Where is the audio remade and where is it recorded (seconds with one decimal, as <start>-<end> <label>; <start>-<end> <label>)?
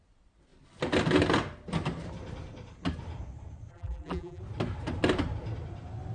0.0-3.7 recorded; 3.7-4.4 remade; 4.4-6.1 recorded